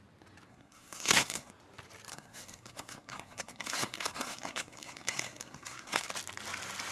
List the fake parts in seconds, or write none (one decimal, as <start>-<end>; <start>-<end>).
0.5-1.5; 2.1-6.1